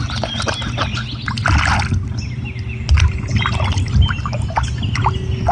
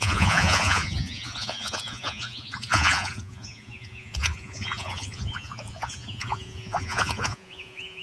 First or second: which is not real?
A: second